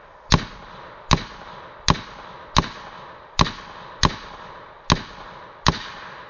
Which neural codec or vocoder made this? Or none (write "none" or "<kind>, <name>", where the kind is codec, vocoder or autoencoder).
none